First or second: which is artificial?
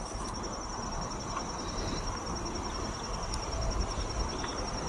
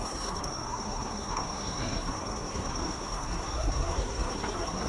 second